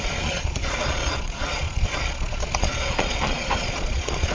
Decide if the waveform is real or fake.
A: fake